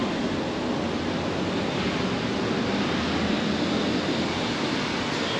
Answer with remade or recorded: recorded